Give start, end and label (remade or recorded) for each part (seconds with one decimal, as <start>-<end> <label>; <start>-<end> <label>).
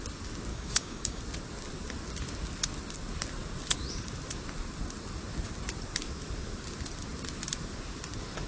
0.0-0.5 recorded; 0.5-1.2 remade; 1.2-8.5 recorded